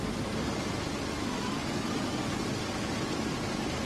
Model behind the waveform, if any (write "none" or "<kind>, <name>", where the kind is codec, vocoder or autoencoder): none